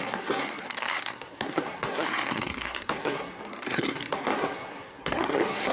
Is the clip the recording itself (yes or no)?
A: no